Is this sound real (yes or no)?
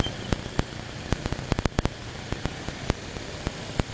yes